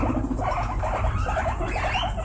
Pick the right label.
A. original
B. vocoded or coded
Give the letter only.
A